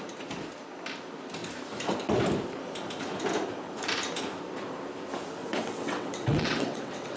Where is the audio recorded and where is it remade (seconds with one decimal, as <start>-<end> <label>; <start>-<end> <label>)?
0.0-5.4 recorded; 5.4-7.2 remade